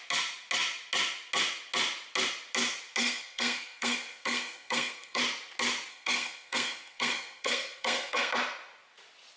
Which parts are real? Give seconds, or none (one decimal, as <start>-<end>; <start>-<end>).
0.0-3.0; 5.2-5.9; 8.3-9.4